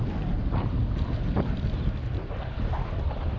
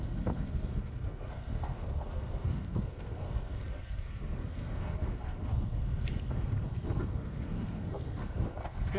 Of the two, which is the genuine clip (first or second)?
first